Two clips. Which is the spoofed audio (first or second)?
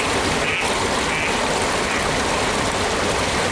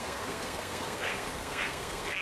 second